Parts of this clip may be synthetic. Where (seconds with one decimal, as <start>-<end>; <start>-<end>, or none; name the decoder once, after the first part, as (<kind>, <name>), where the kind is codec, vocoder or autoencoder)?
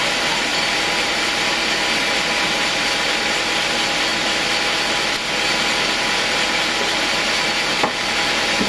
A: none